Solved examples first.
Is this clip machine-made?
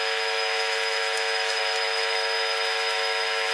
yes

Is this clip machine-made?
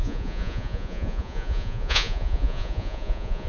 yes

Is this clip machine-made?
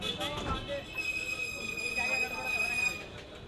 no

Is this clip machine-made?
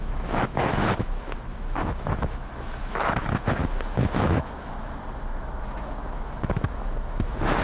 yes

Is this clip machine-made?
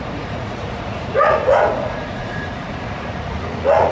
yes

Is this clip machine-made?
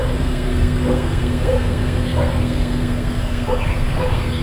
yes